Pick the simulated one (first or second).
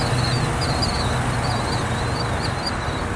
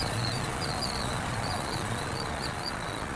second